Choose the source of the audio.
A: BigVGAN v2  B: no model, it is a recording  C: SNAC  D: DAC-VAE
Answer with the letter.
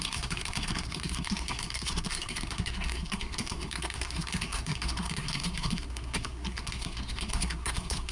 C